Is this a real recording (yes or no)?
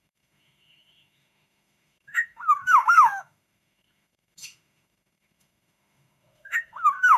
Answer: no